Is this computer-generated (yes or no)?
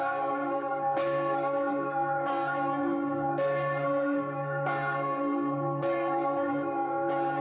yes